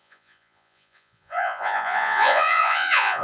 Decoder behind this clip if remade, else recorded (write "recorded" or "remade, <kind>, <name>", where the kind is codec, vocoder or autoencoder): remade, vocoder, Vocos